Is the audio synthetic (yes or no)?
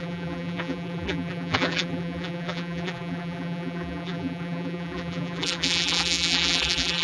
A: yes